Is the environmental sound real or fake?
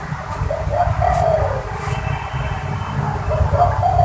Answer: real